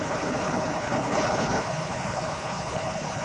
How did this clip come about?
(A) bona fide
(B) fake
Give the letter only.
B